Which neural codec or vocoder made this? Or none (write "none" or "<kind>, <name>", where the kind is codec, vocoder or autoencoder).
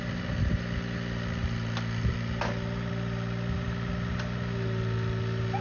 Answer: none